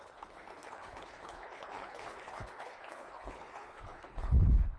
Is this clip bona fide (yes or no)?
no